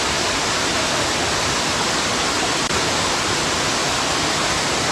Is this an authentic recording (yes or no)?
yes